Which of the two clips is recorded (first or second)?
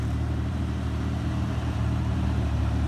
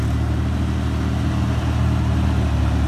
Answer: second